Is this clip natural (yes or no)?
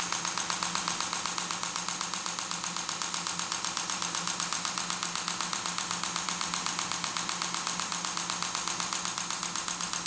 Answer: yes